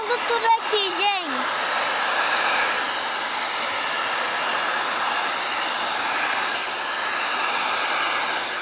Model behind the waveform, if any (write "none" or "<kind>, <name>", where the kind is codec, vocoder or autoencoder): none